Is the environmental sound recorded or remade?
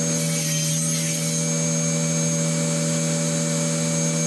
recorded